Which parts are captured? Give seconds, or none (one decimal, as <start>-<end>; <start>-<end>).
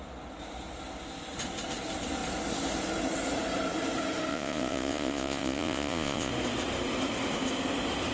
0.0-4.3; 6.3-8.1